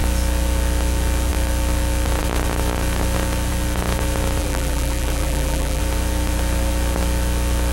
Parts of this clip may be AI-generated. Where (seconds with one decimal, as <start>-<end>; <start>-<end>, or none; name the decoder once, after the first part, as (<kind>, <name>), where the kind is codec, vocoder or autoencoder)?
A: 4.4-5.8 (vocoder, BigVGAN v2)